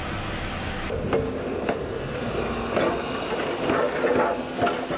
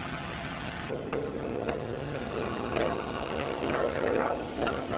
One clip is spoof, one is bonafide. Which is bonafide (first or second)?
first